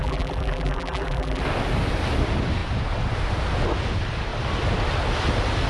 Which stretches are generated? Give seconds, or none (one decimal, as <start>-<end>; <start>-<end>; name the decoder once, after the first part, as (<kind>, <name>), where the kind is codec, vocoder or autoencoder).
0.0-1.4 (vocoder, BigVGAN v2)